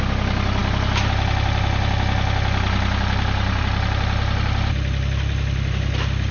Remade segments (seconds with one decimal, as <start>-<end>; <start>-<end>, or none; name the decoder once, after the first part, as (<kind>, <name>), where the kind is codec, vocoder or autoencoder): none